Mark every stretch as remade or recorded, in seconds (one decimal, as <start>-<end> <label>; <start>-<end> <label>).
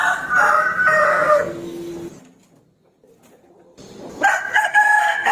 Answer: 0.0-1.1 recorded; 1.1-1.9 remade; 1.9-4.5 recorded; 4.5-5.3 remade